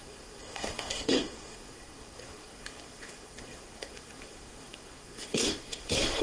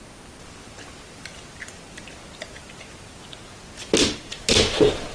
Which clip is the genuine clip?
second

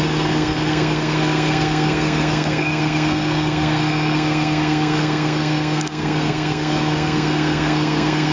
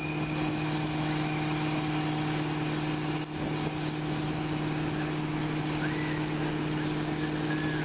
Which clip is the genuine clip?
second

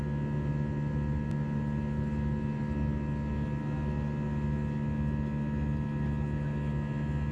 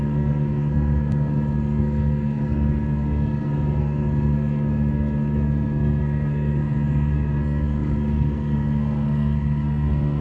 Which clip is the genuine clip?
first